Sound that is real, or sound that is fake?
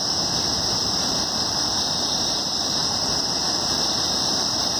fake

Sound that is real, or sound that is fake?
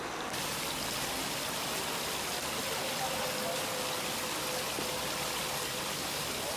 real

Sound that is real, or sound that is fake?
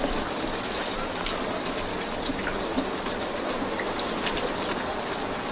real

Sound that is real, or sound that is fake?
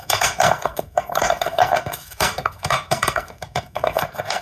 fake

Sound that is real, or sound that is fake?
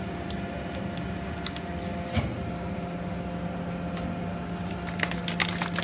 real